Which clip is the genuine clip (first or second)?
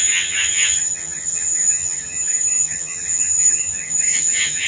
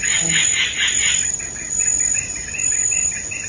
second